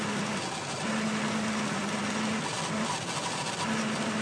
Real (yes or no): yes